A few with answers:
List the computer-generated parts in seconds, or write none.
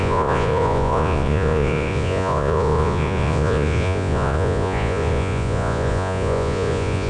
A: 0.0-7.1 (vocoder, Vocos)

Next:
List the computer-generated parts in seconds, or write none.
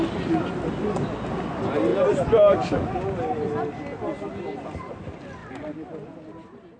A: none